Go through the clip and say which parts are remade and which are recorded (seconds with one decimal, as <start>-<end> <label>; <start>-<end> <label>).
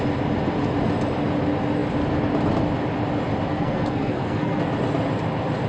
0.0-3.5 recorded; 3.5-4.6 remade; 4.6-5.7 recorded